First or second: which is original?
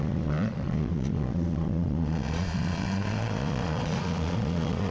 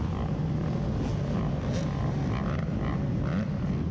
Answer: second